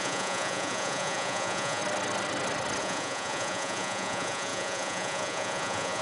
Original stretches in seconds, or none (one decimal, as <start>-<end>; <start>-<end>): 1.8-2.8